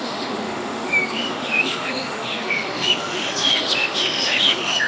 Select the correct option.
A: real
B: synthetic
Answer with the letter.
B